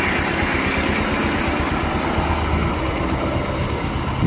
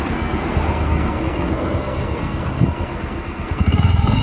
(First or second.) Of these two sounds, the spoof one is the second